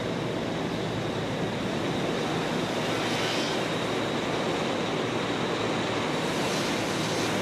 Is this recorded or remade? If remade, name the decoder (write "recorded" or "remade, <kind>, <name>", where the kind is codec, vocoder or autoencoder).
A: recorded